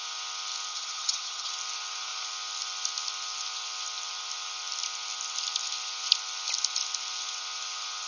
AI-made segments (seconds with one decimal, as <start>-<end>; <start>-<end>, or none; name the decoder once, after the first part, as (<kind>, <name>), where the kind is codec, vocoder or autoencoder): 0.7-1.5 (vocoder, HiFi-GAN)